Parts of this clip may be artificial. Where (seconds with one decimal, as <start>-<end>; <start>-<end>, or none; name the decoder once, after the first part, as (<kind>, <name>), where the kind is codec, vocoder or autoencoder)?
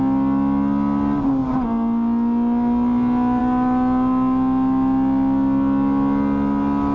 none